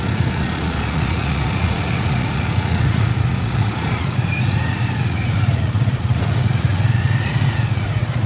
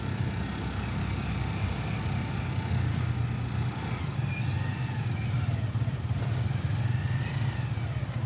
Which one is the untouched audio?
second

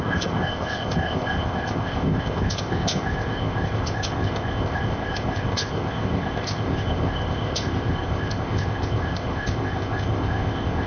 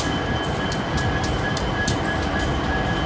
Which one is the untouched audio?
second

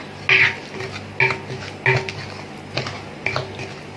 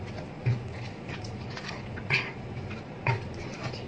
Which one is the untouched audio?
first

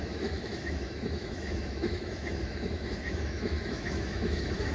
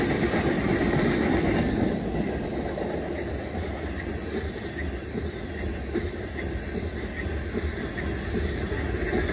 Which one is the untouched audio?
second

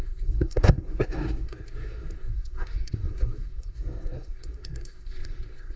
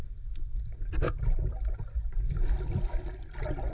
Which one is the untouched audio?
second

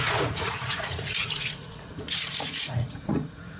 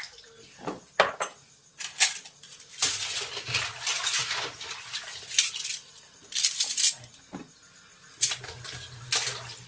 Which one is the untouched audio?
second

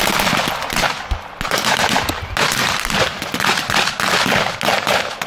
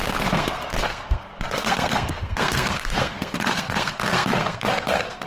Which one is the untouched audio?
first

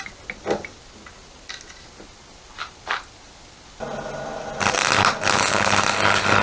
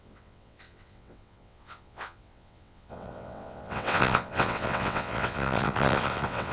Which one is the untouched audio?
first